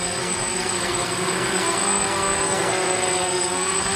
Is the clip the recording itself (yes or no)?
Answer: no